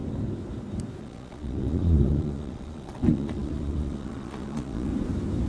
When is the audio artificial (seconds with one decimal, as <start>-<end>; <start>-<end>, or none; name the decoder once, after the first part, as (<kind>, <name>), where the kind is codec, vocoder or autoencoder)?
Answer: 1.0-4.9 (vocoder, Vocos)